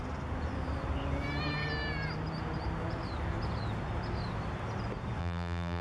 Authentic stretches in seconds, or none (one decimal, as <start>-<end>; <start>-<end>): 0.0-5.2